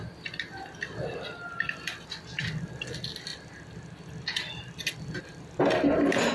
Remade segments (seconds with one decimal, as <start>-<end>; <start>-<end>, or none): none

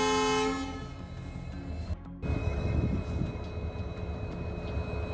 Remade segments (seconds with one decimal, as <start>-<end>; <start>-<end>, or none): 2.4-3.0

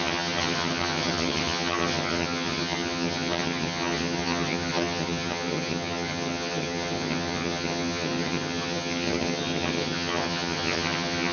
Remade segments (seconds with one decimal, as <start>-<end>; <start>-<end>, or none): 0.0-11.3